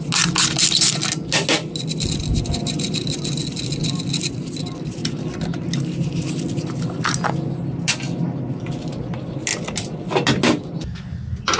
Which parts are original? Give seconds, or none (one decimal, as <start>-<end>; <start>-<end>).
0.0-11.6